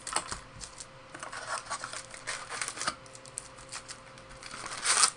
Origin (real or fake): real